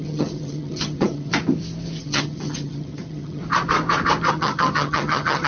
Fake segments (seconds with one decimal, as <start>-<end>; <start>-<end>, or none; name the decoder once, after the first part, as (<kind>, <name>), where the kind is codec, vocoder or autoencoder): 0.0-1.3 (vocoder, HiFi-GAN); 2.0-3.4; 4.3-5.5